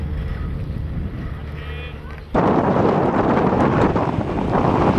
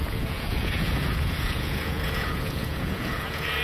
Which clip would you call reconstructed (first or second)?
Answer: second